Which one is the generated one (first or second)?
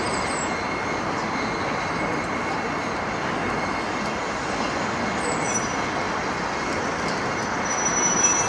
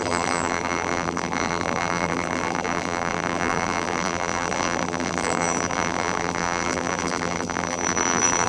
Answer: second